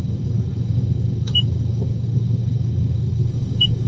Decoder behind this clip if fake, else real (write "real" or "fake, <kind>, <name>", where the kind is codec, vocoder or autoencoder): fake, codec, DAC